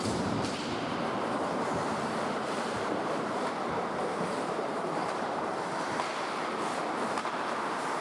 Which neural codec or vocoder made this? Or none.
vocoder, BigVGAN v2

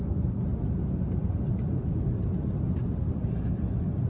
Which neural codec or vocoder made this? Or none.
none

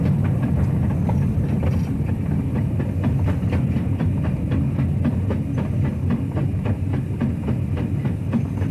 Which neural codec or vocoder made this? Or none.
vocoder, BigVGAN v2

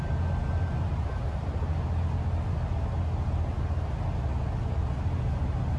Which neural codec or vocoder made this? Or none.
none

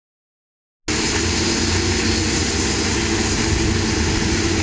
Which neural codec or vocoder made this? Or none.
none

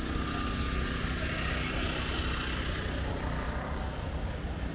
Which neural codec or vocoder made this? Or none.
none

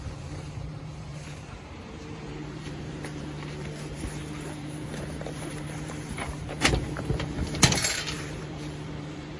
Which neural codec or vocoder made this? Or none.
vocoder, BigVGAN v2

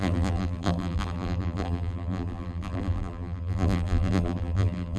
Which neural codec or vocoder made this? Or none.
vocoder, BigVGAN v2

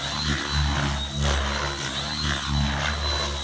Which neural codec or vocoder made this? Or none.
none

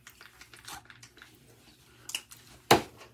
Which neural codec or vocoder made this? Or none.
none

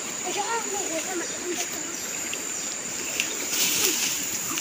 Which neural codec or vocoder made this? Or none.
vocoder, BigVGAN v2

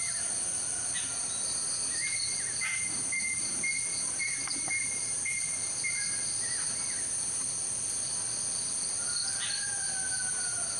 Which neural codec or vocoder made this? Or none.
vocoder, BigVGAN v2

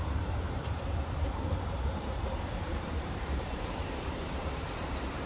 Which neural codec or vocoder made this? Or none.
vocoder, BigVGAN v2